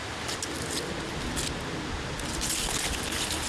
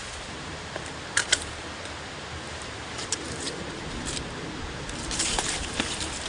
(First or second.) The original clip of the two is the first